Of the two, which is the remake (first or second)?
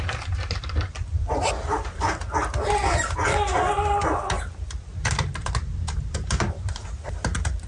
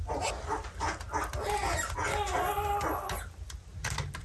first